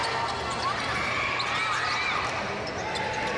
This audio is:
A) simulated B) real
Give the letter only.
B